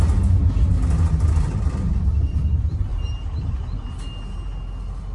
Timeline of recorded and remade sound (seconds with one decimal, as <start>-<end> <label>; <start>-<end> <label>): 0.0-5.1 recorded